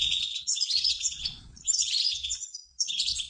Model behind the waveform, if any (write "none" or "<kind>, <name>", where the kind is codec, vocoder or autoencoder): vocoder, Vocos